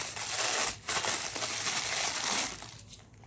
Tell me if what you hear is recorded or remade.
remade